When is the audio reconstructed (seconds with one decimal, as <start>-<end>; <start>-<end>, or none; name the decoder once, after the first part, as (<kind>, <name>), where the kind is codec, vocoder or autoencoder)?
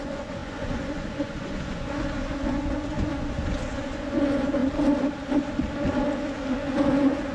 0.0-4.6 (vocoder, Vocos); 6.5-7.3